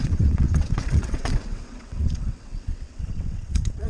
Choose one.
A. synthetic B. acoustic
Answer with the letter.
A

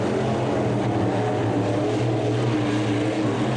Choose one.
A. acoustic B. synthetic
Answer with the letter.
A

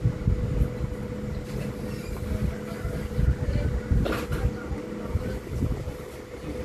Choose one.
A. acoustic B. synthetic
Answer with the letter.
A